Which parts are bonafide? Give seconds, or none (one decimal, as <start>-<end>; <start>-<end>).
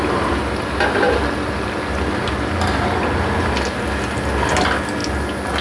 0.0-5.6